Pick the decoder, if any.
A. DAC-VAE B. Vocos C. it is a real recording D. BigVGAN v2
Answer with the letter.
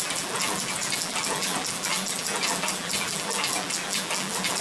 D